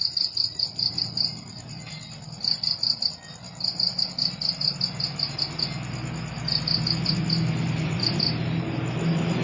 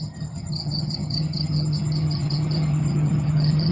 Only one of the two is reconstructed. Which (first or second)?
second